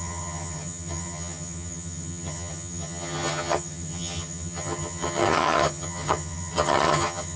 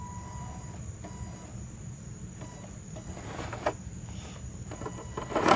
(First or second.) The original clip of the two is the second